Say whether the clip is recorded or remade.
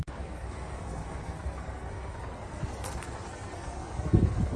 remade